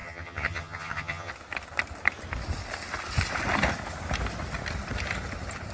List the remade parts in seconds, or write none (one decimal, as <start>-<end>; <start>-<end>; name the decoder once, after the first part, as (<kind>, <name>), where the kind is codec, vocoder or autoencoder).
0.0-1.3 (vocoder, HiFi-GAN)